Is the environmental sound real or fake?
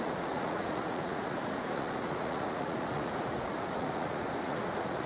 fake